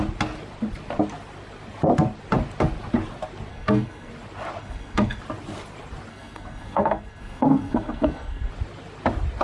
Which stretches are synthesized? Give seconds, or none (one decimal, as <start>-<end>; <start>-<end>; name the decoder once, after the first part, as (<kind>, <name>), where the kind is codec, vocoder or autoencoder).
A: 3.5-4.1 (codec, SNAC); 4.6-5.2; 6.1-8.5